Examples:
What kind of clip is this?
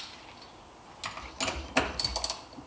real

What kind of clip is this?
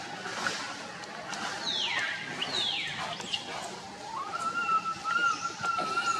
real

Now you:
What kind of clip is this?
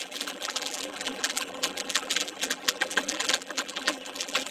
fake